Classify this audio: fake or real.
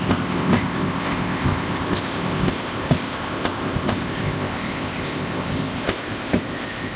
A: fake